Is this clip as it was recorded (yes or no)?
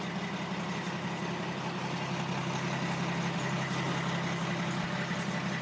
yes